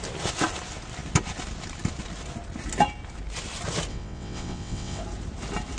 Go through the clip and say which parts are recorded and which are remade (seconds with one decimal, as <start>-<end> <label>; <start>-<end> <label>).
0.0-3.9 recorded; 3.9-5.0 remade; 5.0-5.8 recorded